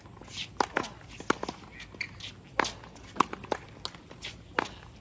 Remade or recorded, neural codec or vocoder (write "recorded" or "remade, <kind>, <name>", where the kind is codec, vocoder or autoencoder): recorded